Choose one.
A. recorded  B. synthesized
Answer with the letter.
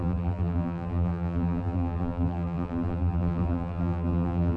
B